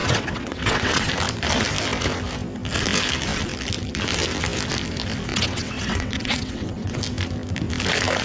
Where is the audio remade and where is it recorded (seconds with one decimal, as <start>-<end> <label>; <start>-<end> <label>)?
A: 0.0-1.1 remade; 1.1-5.3 recorded; 5.3-7.0 remade; 7.0-8.2 recorded